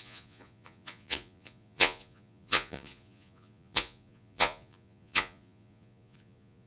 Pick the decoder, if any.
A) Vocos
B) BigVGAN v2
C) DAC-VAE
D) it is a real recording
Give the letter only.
A